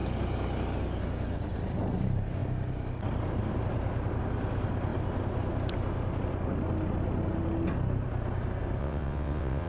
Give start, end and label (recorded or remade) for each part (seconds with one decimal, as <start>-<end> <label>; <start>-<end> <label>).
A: 0.0-8.8 recorded; 8.8-9.7 remade